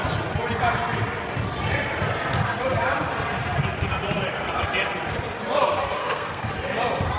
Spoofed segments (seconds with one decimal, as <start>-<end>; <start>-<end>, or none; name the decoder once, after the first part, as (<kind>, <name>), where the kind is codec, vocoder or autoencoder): 6.0-6.5 (codec, SNAC)